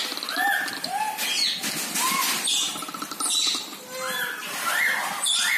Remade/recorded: recorded